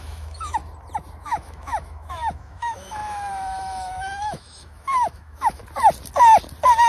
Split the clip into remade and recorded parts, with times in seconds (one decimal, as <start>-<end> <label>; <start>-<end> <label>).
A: 0.0-0.6 remade; 0.6-1.2 recorded; 1.2-5.6 remade; 5.6-6.9 recorded